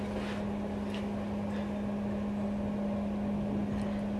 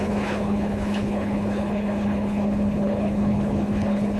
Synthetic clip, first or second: second